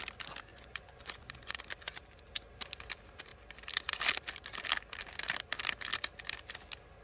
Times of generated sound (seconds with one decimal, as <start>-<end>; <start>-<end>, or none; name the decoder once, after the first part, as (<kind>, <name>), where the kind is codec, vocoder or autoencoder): 0.5-1.6 (vocoder, Vocos)